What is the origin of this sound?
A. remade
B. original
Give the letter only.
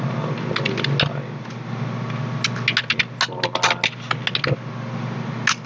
B